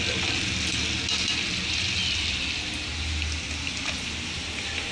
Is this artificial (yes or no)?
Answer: no